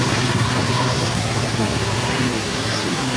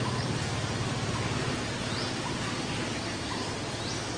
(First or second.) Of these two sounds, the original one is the second